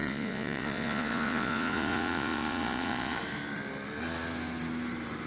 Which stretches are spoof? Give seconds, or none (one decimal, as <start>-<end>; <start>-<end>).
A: 0.0-3.2